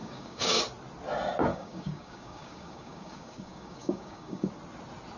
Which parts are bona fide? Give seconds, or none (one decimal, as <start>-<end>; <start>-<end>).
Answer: 0.6-1.5; 4.5-5.2